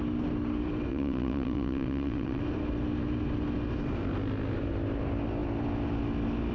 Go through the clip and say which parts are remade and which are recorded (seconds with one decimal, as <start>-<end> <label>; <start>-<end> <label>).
0.0-0.9 recorded; 0.9-2.4 remade; 2.4-6.5 recorded